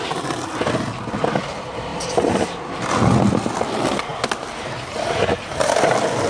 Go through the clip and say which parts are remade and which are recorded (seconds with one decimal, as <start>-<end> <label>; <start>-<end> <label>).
0.0-6.3 recorded